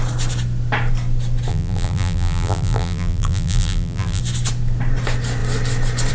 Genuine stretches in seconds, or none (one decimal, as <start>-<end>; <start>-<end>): 0.0-1.5; 4.2-6.1